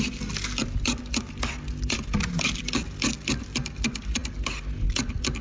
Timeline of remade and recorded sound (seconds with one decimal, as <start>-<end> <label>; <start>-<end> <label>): 0.0-5.4 recorded